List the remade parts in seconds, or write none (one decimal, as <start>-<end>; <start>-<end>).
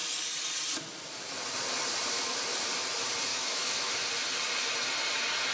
3.3-3.9